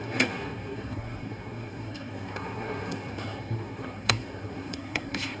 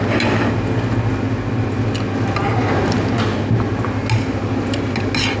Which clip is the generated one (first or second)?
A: first